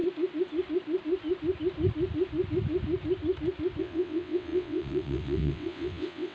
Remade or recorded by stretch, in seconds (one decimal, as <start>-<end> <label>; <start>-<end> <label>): 0.0-3.8 recorded; 3.8-6.3 remade